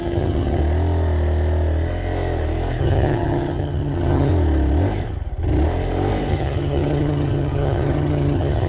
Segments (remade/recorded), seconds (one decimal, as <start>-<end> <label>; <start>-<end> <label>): 0.0-0.6 remade; 0.6-2.8 recorded; 2.8-4.3 remade; 4.3-6.3 recorded; 6.3-8.7 remade